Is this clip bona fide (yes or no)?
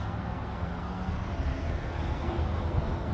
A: no